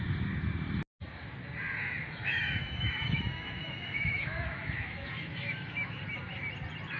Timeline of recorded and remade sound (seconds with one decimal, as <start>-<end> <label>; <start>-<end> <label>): 0.0-1.8 recorded; 1.8-6.0 remade; 6.0-7.0 recorded